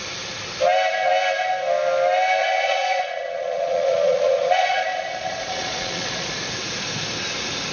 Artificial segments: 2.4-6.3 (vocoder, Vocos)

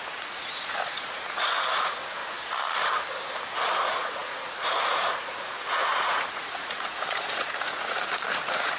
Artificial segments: 0.0-2.2 (vocoder, Vocos); 3.7-8.8